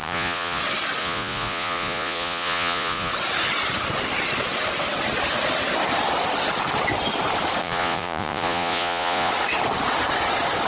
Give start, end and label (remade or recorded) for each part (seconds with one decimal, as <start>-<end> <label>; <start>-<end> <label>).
0.0-0.6 remade; 0.6-1.0 recorded; 1.0-3.1 remade; 3.1-7.6 recorded; 7.6-9.3 remade; 9.3-10.7 recorded